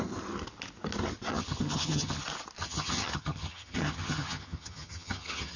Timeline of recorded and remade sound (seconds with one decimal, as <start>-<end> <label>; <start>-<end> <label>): 0.0-1.3 recorded; 1.3-2.2 remade; 2.2-2.6 recorded; 2.6-5.6 remade